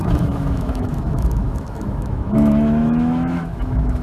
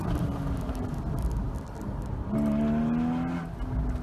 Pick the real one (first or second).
second